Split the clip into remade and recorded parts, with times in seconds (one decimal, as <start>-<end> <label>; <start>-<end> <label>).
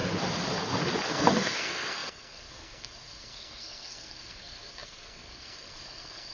0.0-1.1 recorded; 1.1-6.3 remade